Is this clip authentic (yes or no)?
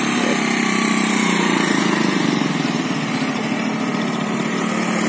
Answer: no